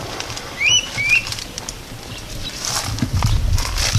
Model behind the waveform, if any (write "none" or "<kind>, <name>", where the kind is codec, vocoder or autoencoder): vocoder, BigVGAN v2